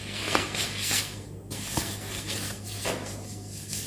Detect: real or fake fake